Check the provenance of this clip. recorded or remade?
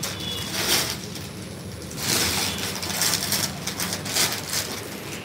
recorded